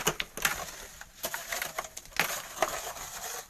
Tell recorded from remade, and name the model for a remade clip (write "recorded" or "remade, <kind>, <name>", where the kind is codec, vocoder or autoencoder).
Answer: recorded